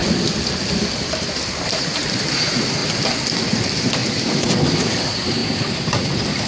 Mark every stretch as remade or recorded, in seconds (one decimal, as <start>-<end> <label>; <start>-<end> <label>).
0.0-0.9 recorded; 0.9-2.8 remade; 2.8-3.4 recorded; 3.4-4.0 remade; 4.0-5.0 recorded; 5.0-6.5 remade